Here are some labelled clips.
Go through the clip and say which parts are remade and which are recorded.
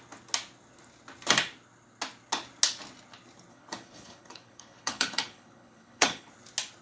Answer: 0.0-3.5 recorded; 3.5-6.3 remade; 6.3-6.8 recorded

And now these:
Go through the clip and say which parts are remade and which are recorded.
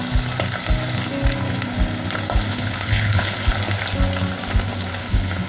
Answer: 0.0-2.5 recorded; 2.5-3.5 remade; 3.5-5.0 recorded; 5.0-5.5 remade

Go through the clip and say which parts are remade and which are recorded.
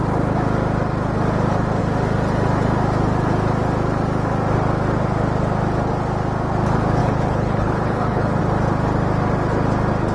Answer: 0.0-7.0 recorded; 7.0-8.4 remade; 8.4-10.1 recorded